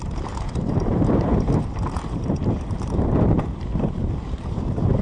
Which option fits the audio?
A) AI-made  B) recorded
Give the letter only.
A